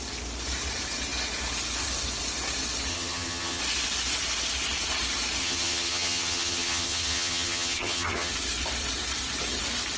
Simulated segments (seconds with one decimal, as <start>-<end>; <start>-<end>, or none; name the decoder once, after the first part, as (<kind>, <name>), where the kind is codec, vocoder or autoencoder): 2.9-3.6 (vocoder, HiFi-GAN); 5.4-8.3

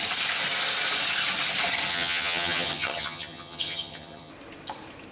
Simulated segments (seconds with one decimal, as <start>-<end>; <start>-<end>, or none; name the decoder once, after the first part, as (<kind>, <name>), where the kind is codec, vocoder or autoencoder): 1.9-4.3 (vocoder, HiFi-GAN)

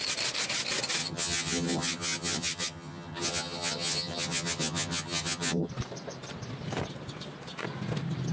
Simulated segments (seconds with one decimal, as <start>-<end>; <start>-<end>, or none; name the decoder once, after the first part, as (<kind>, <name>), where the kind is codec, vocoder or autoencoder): 1.0-5.7 (vocoder, HiFi-GAN)